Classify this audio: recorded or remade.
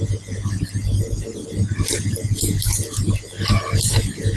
recorded